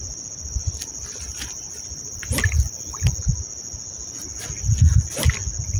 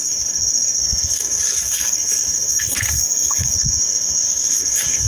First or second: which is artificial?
second